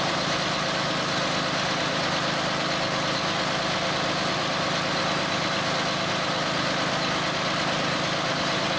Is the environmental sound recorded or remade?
recorded